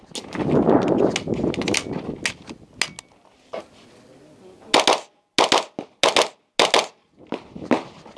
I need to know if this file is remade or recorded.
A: recorded